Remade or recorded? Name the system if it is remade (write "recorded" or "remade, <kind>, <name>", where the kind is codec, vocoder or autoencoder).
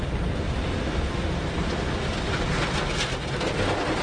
recorded